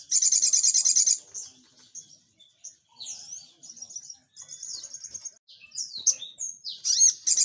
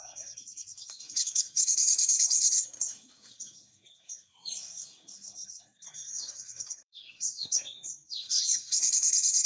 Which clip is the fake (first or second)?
second